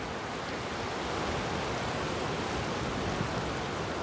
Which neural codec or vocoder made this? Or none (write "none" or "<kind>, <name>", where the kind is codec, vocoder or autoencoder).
none